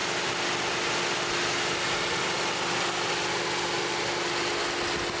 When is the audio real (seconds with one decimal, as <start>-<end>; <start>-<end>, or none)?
0.0-5.2